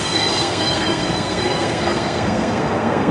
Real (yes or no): no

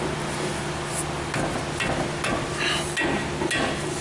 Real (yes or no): yes